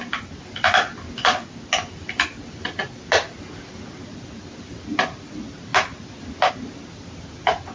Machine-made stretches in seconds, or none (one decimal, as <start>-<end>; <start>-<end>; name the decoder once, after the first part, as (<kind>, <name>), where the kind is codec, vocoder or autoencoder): none

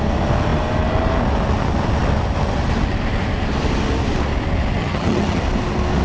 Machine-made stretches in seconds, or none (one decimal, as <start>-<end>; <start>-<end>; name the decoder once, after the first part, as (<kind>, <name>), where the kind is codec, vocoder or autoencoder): 4.8-5.4 (vocoder, HiFi-GAN)

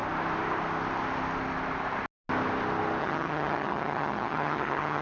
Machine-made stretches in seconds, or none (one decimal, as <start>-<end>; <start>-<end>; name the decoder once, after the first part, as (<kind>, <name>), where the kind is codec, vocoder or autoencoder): 3.0-5.0 (vocoder, HiFi-GAN)

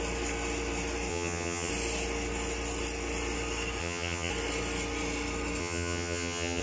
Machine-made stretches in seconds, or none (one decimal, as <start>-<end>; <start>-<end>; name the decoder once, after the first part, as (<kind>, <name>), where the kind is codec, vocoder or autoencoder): 1.1-1.7 (vocoder, HiFi-GAN); 3.8-4.3; 5.6-6.6

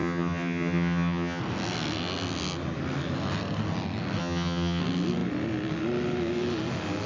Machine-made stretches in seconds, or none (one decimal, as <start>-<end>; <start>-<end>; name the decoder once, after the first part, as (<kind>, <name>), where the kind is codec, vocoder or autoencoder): 0.0-1.4 (vocoder, HiFi-GAN); 4.2-4.8

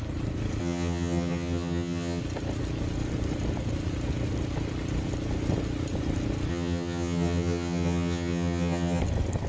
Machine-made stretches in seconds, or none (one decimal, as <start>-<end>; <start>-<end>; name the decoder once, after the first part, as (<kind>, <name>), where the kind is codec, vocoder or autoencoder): 0.6-2.2 (vocoder, HiFi-GAN); 6.5-9.0

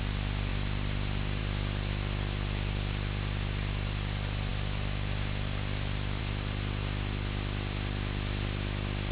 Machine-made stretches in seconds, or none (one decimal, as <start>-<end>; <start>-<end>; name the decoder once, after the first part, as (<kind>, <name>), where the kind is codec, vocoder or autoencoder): none

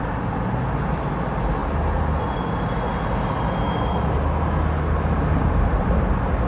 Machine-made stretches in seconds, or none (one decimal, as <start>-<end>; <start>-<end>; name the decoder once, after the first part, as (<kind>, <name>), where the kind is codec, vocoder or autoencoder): none